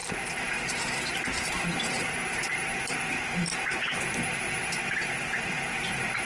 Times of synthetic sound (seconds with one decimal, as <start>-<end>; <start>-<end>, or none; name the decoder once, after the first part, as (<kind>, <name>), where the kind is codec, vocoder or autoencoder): 0.0-6.2 (vocoder, BigVGAN v2)